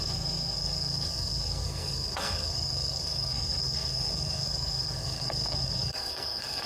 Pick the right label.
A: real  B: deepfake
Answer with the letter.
B